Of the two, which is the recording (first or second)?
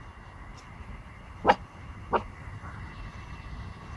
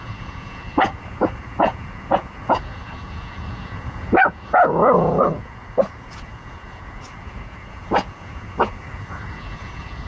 first